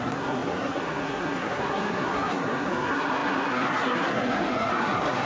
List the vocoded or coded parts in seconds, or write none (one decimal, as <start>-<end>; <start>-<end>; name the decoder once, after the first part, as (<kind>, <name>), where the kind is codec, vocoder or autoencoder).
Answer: 0.0-5.3 (codec, SNAC)